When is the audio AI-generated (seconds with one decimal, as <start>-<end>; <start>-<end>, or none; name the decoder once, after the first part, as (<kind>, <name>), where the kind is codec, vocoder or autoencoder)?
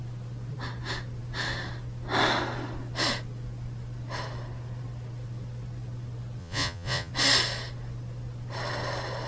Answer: 6.4-7.1 (vocoder, Vocos)